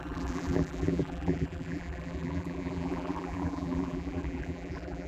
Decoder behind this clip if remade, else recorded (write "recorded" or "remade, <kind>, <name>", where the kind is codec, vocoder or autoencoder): remade, vocoder, BigVGAN v2